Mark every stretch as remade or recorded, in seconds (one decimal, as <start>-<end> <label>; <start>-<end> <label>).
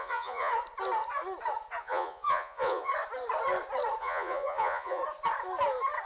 0.0-0.5 remade; 0.5-1.8 recorded; 1.8-2.9 remade; 2.9-4.0 recorded; 4.0-5.0 remade; 5.0-6.1 recorded